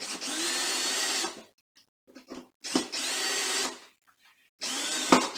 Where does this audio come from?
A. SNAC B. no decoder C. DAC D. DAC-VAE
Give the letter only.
B